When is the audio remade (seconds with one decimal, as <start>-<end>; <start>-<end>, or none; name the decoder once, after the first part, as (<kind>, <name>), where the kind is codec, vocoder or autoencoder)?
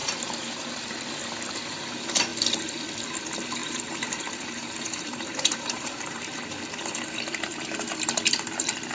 0.0-0.9 (vocoder, BigVGAN v2); 3.6-6.4